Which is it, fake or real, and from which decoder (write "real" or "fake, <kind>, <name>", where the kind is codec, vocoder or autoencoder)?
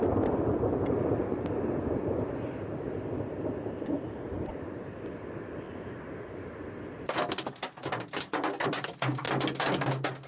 real